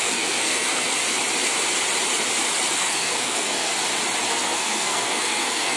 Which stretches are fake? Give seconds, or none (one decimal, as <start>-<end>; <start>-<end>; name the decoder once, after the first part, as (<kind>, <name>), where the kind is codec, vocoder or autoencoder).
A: 0.0-1.0 (codec, SNAC); 2.8-3.7; 4.3-5.8